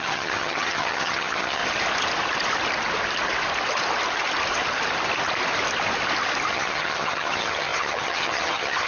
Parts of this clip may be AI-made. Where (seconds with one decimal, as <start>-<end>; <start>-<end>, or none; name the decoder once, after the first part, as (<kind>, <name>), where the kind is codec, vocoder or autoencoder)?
0.0-1.6 (vocoder, HiFi-GAN); 6.5-8.9